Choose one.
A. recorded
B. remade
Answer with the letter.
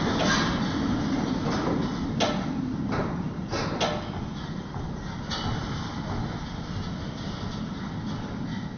A